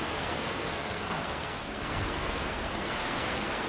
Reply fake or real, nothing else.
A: fake